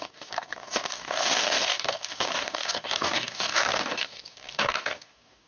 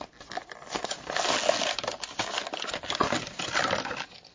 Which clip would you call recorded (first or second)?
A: second